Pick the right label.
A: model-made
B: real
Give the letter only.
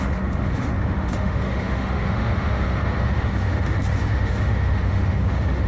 A